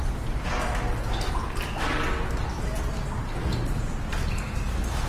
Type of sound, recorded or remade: recorded